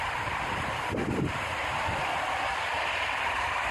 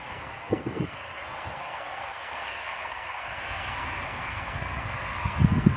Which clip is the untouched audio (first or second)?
first